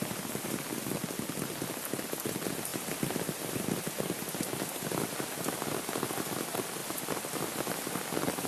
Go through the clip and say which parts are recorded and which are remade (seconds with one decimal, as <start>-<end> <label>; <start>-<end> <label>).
0.0-8.5 recorded